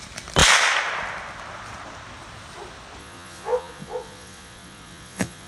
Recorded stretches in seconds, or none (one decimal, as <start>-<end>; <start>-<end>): 0.0-3.0